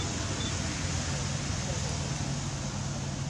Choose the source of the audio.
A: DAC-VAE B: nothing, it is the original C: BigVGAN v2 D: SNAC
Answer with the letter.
B